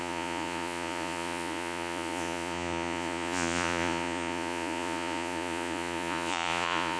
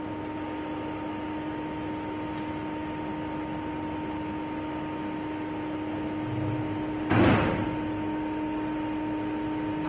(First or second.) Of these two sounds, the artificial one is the first